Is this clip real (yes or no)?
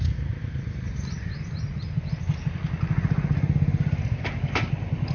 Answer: yes